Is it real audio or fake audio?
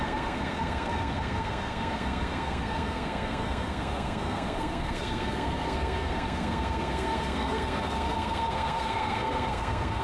fake